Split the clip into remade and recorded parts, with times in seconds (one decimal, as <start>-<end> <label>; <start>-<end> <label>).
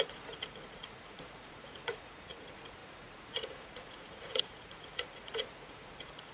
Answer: 0.0-6.3 remade